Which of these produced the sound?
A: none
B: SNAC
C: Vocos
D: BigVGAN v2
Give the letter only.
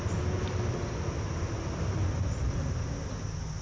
A